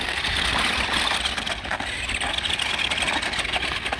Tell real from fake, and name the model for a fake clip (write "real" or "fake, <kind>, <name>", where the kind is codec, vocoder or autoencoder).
real